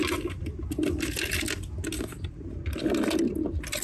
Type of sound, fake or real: real